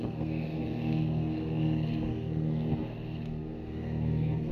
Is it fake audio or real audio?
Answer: fake